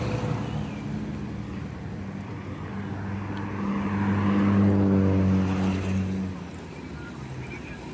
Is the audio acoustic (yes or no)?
yes